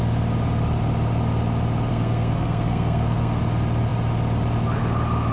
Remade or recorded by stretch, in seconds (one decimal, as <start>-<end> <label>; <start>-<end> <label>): 0.0-1.9 recorded; 1.9-3.4 remade; 3.4-5.3 recorded